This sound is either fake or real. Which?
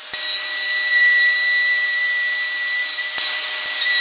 real